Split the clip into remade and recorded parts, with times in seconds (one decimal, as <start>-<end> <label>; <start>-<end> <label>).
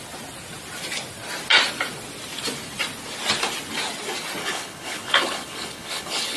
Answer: 0.0-4.4 recorded; 4.4-6.4 remade